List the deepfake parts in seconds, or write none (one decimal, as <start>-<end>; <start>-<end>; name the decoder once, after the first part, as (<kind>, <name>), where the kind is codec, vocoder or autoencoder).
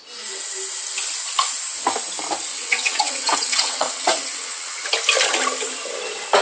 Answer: 2.5-4.9 (vocoder, WaveNeXt)